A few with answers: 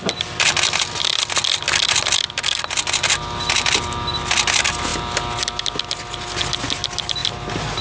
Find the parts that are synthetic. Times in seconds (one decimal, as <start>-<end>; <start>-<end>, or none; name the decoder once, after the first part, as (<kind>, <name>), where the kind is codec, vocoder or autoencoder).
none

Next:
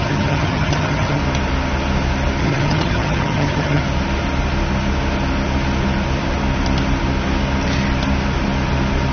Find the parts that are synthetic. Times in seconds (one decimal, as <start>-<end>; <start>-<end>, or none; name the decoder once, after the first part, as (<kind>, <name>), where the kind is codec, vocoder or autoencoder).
0.0-1.2 (vocoder, HiFi-GAN); 2.4-3.8

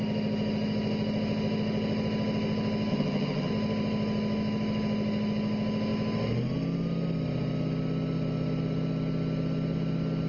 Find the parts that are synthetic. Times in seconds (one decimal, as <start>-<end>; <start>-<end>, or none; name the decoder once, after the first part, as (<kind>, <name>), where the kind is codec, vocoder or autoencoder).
2.9-3.5 (vocoder, HiFi-GAN)